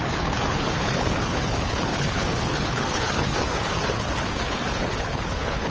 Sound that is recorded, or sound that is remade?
remade